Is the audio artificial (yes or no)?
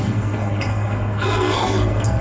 yes